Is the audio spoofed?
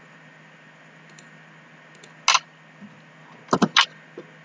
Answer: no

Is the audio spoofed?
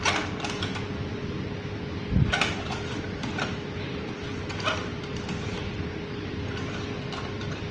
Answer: no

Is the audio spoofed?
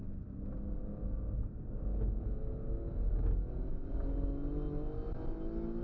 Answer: no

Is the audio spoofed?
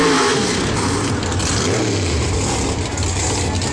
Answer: no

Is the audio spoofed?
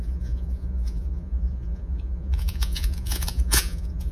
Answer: yes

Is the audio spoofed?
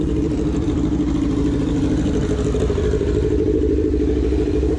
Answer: yes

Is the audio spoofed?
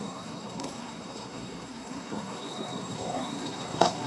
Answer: yes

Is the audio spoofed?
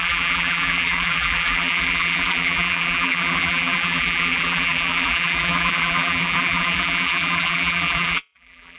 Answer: yes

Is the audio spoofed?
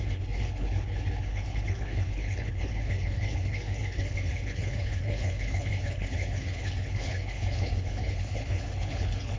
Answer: yes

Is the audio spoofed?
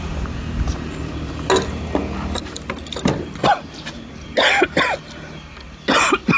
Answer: no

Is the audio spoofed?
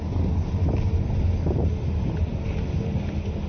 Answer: no